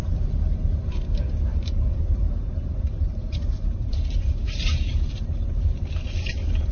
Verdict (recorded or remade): remade